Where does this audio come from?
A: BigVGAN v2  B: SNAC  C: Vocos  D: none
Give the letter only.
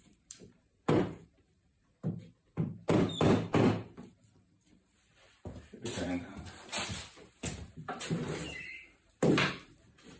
A